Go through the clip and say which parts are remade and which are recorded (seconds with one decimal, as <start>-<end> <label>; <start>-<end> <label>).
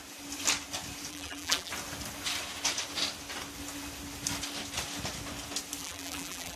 0.0-1.1 recorded; 1.1-1.7 remade; 1.7-5.8 recorded; 5.8-6.6 remade